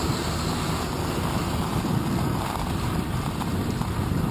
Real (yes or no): yes